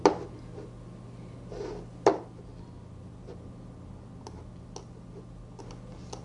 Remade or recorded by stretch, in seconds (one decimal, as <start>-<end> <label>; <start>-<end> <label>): 0.0-6.2 recorded